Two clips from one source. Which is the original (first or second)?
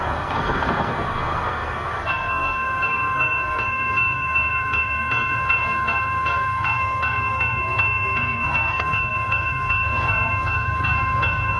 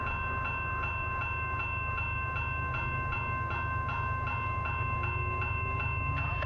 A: second